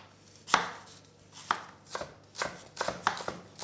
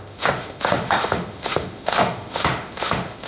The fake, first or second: second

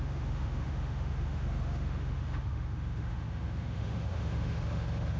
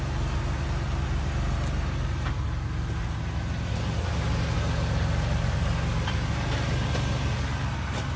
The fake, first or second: first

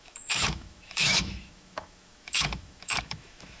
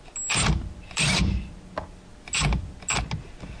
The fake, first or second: first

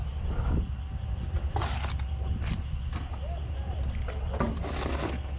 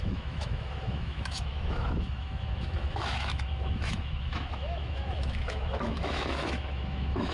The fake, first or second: second